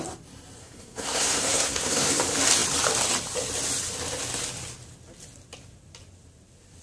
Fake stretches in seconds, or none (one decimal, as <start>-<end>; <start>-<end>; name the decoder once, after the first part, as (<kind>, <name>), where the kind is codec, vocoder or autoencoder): 0.6-2.2 (codec, SNAC)